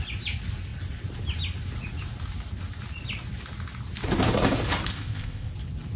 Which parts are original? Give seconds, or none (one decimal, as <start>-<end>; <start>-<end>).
0.0-4.9; 5.5-6.0